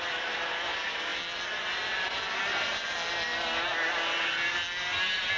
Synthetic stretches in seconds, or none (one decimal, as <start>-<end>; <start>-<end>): none